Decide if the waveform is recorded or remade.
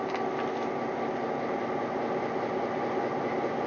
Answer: recorded